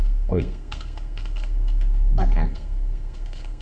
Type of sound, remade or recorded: remade